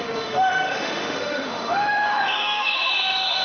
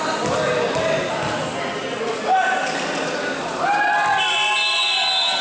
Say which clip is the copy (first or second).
first